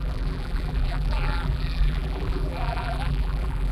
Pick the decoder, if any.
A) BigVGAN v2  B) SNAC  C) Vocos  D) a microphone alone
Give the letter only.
A